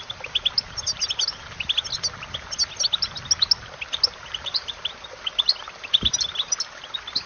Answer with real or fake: real